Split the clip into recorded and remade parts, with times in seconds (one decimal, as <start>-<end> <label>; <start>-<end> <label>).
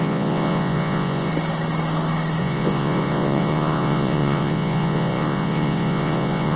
0.0-1.3 remade; 1.3-2.4 recorded; 2.4-6.6 remade